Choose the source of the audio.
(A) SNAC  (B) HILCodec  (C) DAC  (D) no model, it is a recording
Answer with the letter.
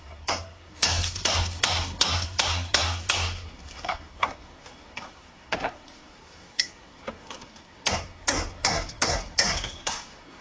A